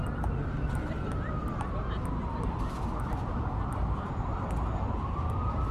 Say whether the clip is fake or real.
real